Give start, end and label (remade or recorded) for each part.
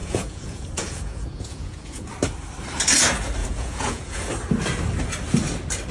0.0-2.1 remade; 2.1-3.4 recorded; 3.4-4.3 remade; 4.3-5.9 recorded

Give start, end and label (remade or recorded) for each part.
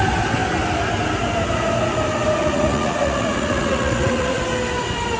0.0-2.4 recorded; 2.4-4.4 remade; 4.4-5.2 recorded